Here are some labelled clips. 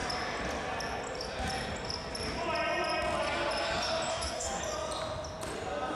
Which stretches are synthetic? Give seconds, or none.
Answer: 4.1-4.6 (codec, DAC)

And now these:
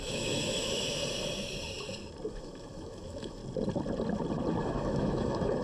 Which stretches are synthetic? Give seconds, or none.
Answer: 0.0-1.0 (autoencoder, DAC-VAE); 2.3-3.4; 4.6-5.6